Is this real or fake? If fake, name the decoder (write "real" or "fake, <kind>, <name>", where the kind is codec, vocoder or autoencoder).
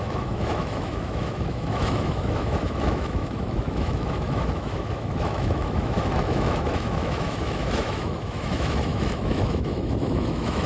fake, autoencoder, DAC-VAE